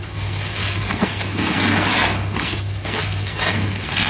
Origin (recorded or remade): remade